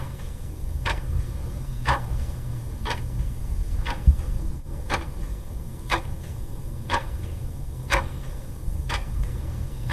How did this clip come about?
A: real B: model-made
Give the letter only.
B